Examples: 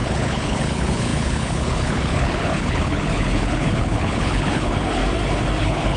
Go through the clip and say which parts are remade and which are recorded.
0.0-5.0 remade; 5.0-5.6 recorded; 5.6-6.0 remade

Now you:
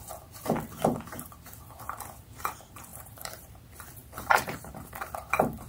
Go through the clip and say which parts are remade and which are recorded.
0.0-2.9 recorded; 2.9-3.6 remade; 3.6-4.0 recorded; 4.0-5.0 remade; 5.0-5.7 recorded

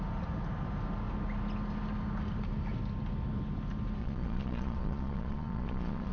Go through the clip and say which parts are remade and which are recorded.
0.0-4.0 recorded; 4.0-6.1 remade